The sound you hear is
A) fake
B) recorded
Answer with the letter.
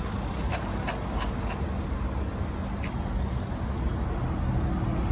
B